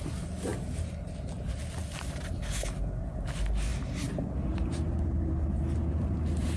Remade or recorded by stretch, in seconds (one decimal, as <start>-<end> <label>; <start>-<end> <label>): 0.0-1.8 recorded; 1.8-2.4 remade; 2.4-3.7 recorded; 3.7-5.3 remade; 5.3-5.9 recorded; 5.9-6.6 remade